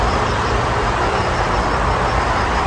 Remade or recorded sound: remade